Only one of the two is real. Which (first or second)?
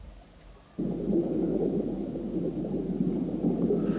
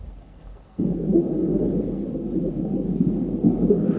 first